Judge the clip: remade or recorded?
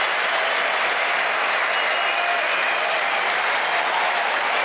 recorded